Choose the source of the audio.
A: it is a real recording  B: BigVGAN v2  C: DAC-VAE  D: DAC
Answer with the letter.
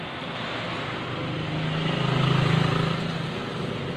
A